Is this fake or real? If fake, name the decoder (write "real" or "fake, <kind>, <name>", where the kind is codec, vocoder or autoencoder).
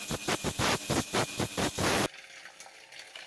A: real